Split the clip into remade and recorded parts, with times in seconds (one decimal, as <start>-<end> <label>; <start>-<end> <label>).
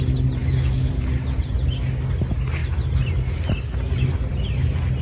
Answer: 0.0-0.4 recorded; 0.4-0.9 remade; 0.9-5.0 recorded